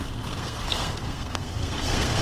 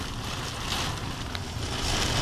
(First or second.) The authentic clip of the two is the second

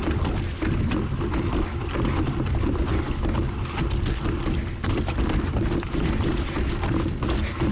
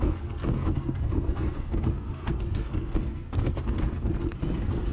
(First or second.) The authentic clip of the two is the first